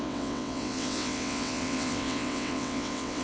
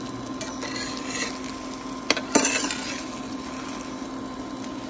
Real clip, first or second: second